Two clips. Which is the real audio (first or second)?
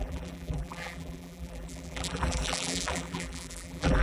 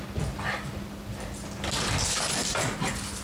second